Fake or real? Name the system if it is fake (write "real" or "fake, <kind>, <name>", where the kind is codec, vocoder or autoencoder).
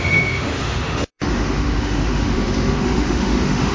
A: fake, autoencoder, DAC-VAE